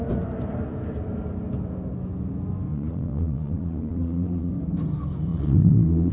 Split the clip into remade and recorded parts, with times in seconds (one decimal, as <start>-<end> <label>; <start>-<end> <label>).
0.0-2.7 recorded; 2.7-4.5 remade; 4.5-5.3 recorded; 5.3-6.1 remade